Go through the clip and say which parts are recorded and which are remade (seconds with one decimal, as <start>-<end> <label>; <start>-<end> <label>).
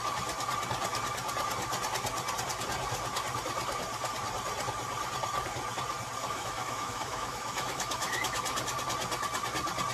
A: 0.0-6.2 recorded; 6.2-8.4 remade; 8.4-9.9 recorded